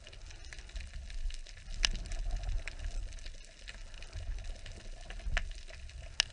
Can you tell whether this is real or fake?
real